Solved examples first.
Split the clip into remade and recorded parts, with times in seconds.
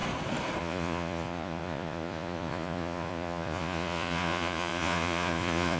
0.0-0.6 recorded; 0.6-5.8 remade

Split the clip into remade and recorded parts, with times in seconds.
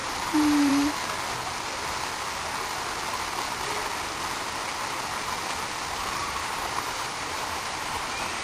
0.0-0.7 remade; 0.7-6.2 recorded; 6.2-8.4 remade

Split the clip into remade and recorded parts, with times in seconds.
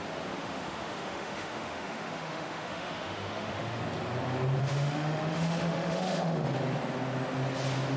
0.0-0.4 recorded; 0.4-3.8 remade; 3.8-4.6 recorded; 4.6-6.6 remade; 6.6-8.0 recorded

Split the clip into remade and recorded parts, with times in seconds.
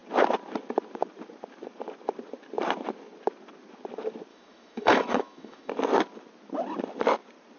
0.0-4.3 recorded; 4.3-5.7 remade; 5.7-7.6 recorded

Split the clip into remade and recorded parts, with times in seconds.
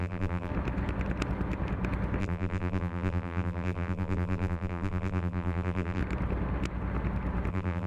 0.0-0.5 remade; 0.5-2.2 recorded; 2.2-6.0 remade; 6.0-7.5 recorded; 7.5-7.9 remade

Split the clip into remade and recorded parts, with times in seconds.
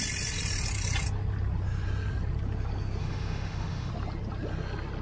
0.0-3.0 recorded; 3.0-3.9 remade; 3.9-5.0 recorded